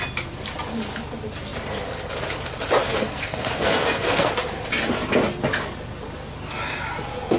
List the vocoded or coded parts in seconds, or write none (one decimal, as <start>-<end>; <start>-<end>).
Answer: 2.8-4.3